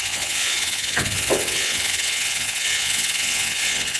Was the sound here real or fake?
fake